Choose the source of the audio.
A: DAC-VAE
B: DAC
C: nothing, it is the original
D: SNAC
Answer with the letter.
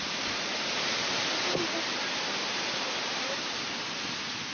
C